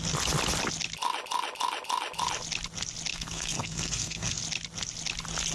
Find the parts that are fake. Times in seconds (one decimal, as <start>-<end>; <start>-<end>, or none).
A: 3.1-4.4